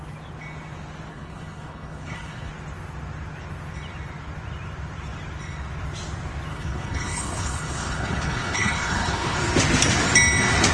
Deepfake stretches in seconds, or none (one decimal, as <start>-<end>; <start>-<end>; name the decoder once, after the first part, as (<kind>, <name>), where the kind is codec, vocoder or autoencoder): 1.1-2.5 (codec, HILCodec); 6.5-9.4